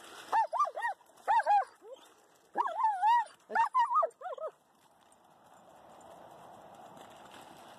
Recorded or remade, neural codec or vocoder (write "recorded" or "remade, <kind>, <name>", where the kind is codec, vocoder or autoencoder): recorded